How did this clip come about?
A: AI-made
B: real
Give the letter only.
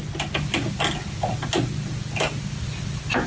B